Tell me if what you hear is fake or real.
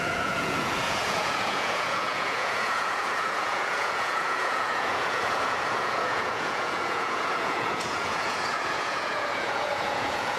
fake